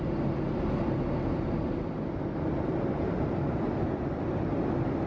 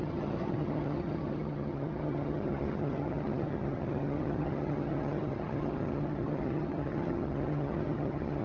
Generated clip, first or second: second